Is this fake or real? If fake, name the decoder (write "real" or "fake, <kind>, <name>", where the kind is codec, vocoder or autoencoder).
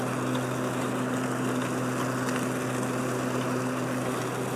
real